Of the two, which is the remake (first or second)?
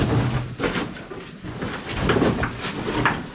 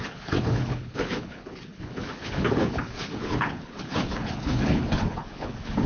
second